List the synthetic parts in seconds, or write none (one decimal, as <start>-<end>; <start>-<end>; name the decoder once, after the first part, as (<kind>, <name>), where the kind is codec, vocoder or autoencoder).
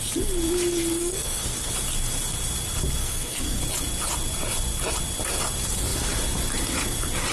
1.0-1.7 (codec, SNAC); 3.0-3.6